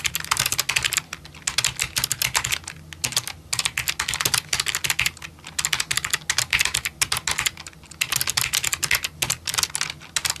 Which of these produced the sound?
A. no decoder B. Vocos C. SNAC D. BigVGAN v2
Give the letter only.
A